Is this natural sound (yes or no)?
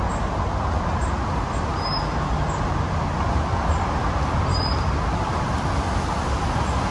yes